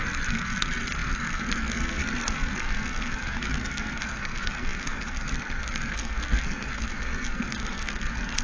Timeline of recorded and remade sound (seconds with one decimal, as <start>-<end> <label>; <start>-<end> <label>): 0.0-8.4 remade